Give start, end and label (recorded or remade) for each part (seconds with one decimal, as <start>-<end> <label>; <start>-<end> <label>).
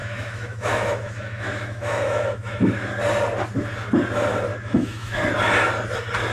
0.0-2.9 remade; 2.9-4.5 recorded; 4.5-5.2 remade; 5.2-6.3 recorded